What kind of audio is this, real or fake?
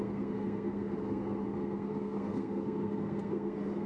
fake